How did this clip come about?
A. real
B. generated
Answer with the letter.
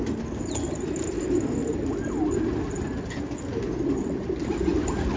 A